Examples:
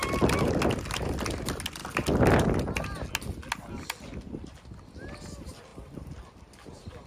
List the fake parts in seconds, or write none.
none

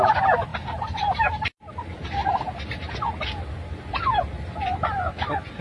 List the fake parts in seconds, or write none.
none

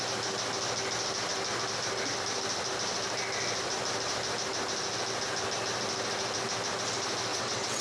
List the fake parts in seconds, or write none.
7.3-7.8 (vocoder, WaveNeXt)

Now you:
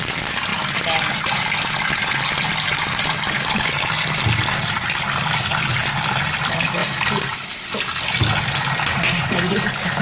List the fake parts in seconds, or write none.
none

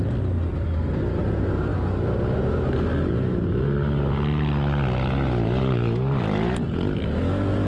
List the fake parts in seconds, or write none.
none

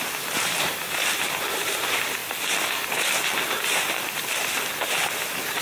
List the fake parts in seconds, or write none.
0.0-2.2 (vocoder, BigVGAN v2); 4.7-5.6

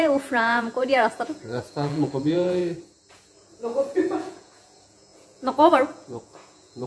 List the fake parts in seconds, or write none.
0.0-2.6 (vocoder, Vocos); 3.1-6.9